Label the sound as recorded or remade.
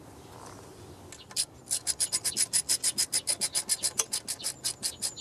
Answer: recorded